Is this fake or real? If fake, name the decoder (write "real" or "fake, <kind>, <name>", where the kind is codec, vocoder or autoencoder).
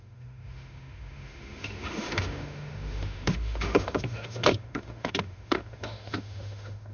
fake, autoencoder, DAC-VAE